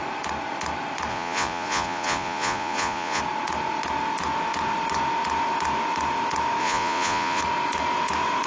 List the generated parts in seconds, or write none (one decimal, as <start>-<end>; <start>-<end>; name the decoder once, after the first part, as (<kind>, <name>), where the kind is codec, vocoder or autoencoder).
1.1-3.2 (vocoder, Vocos); 6.6-7.4